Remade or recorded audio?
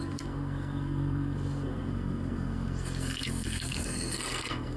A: remade